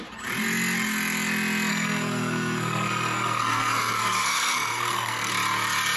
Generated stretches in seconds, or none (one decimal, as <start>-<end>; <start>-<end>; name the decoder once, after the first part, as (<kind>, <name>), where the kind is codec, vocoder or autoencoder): 1.7-5.3 (codec, SNAC)